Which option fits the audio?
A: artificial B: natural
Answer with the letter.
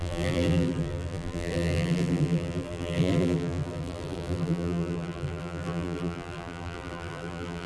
A